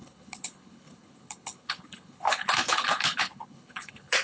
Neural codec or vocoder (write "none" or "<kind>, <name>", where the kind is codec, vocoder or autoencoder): codec, HILCodec